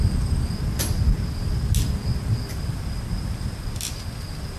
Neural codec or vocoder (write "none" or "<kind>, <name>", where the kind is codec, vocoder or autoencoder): none